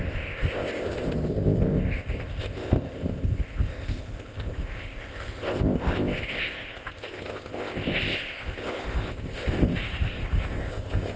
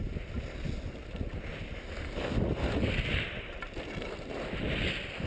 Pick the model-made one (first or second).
first